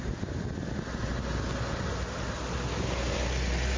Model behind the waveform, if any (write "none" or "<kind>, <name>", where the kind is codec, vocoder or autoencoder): none